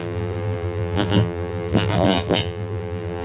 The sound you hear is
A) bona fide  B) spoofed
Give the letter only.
B